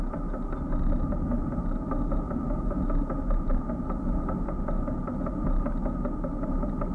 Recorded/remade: recorded